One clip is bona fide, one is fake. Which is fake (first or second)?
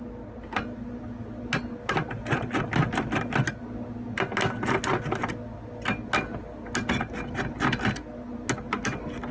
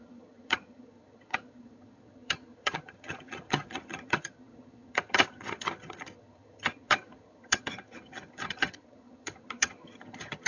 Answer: second